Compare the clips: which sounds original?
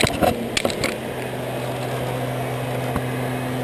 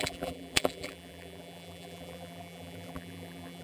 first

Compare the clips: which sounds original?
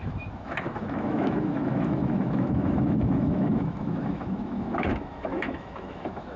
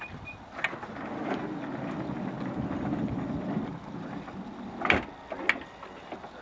second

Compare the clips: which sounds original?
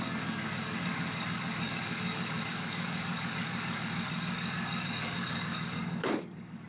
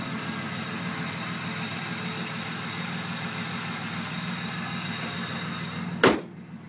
second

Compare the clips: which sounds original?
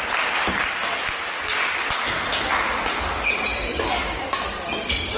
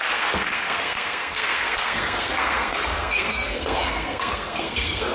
first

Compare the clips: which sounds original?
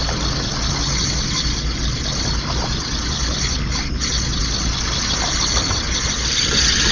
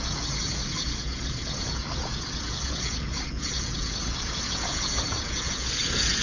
first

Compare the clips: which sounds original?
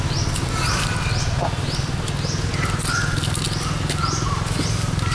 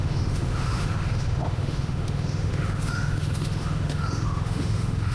first